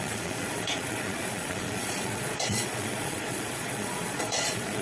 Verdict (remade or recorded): remade